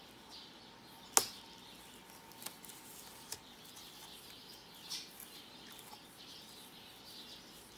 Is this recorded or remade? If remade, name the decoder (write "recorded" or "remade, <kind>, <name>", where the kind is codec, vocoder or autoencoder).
recorded